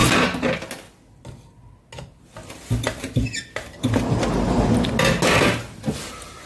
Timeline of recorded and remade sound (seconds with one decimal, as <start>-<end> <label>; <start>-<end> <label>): 0.0-6.5 recorded